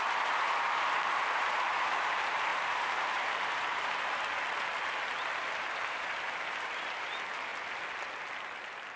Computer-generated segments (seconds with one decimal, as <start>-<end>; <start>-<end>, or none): 0.0-4.3; 5.7-7.5